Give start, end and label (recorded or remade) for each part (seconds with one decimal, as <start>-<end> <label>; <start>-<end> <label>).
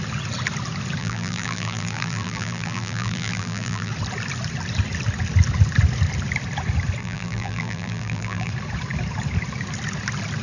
0.0-1.0 recorded; 1.0-3.9 remade; 3.9-7.0 recorded; 7.0-8.5 remade; 8.5-10.4 recorded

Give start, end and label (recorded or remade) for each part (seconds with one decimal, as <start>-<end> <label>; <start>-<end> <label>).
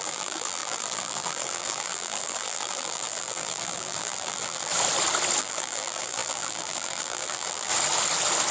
0.0-4.7 remade; 4.7-5.4 recorded; 5.4-7.7 remade; 7.7-8.5 recorded